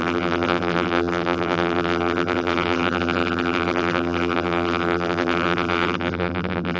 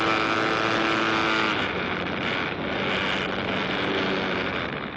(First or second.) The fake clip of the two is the first